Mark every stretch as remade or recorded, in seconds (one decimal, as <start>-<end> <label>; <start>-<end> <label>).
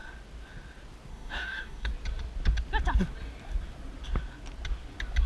0.0-1.1 recorded; 1.1-1.9 remade; 1.9-5.3 recorded